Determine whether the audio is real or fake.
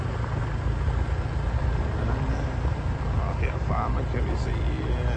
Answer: real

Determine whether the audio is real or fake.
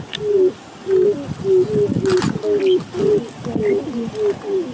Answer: real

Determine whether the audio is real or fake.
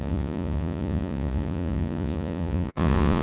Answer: fake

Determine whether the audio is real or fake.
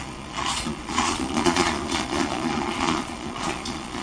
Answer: fake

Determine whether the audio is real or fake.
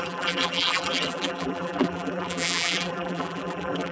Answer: fake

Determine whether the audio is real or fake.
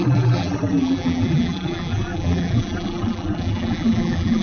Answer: fake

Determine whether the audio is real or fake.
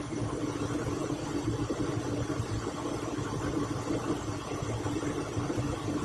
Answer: real